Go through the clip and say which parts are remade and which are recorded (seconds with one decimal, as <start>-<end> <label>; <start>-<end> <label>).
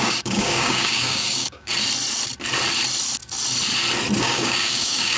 0.0-1.7 remade; 1.7-4.2 recorded; 4.2-5.2 remade